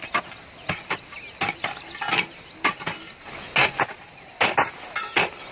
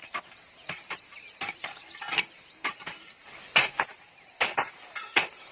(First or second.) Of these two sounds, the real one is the first